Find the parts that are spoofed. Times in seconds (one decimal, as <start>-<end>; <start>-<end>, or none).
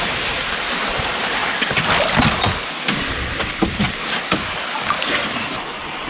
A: none